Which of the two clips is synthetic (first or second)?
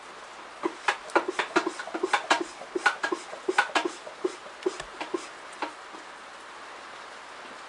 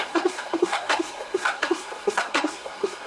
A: second